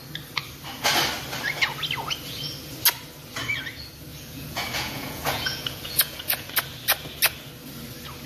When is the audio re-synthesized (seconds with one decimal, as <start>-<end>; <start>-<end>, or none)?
4.1-6.5